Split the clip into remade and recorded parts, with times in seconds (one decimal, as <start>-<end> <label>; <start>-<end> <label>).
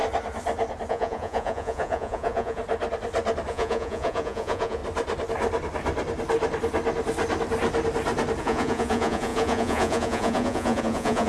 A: 0.0-0.9 recorded; 0.9-2.6 remade; 2.6-3.5 recorded; 3.5-4.8 remade; 4.8-8.4 recorded; 8.4-11.3 remade